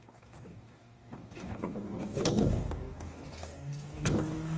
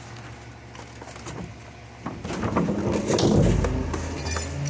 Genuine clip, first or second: second